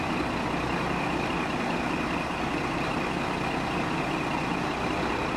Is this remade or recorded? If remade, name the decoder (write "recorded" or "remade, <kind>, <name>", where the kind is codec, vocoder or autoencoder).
recorded